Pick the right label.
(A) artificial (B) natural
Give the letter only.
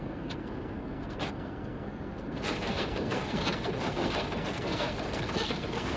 A